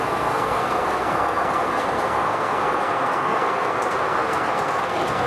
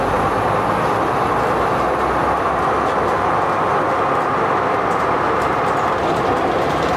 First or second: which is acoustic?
second